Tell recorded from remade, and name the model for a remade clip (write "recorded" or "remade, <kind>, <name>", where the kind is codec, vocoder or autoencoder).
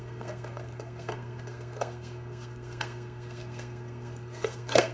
remade, codec, SNAC